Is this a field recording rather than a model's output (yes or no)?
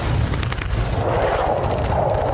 yes